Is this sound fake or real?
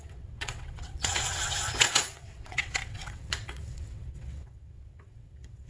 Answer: fake